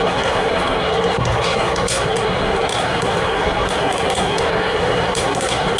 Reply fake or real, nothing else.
fake